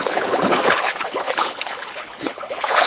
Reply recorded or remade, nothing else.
remade